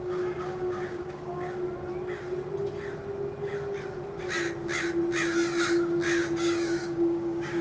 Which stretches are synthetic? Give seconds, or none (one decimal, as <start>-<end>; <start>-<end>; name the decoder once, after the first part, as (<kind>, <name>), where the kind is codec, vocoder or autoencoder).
0.0-1.6 (codec, DAC); 6.2-7.6